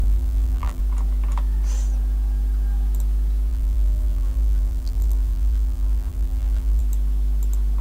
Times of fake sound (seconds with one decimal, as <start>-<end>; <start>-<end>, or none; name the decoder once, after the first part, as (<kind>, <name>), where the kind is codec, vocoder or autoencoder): 0.0-0.8 (vocoder, BigVGAN v2); 3.5-6.8